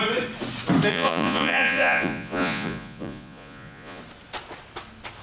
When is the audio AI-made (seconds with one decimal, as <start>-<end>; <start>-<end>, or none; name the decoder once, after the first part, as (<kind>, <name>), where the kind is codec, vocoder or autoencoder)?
0.9-4.0 (vocoder, Vocos)